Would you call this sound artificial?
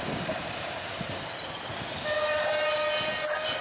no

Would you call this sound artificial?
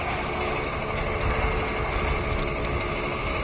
no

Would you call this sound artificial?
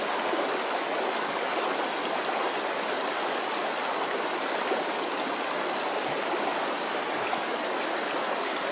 no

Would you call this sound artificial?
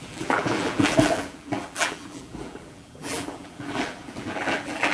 yes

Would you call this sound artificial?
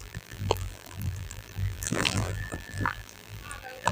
yes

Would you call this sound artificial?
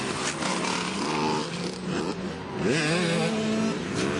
no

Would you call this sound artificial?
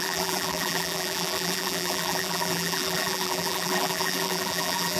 yes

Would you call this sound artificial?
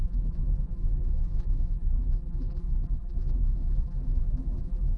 yes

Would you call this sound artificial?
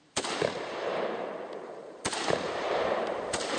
yes